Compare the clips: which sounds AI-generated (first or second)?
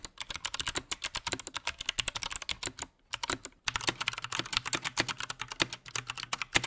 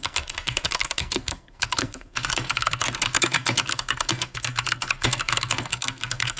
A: second